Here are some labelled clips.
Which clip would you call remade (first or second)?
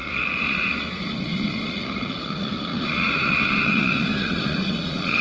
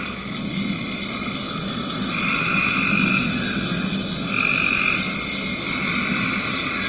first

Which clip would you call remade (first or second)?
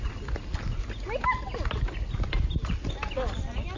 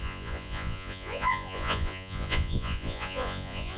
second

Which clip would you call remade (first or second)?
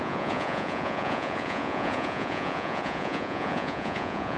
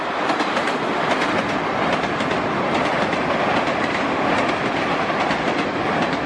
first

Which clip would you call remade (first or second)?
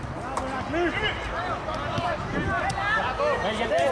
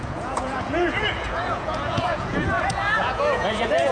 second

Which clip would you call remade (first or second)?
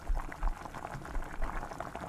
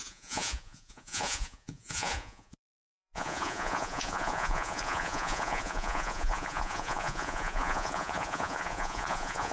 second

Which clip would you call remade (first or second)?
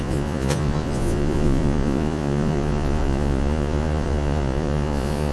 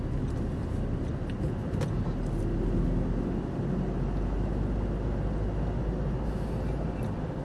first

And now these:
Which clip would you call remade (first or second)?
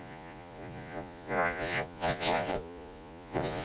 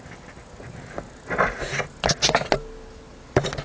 first